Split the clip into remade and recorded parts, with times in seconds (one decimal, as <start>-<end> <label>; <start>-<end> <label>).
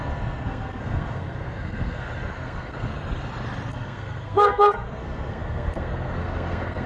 0.0-2.9 remade; 2.9-3.7 recorded; 3.7-6.9 remade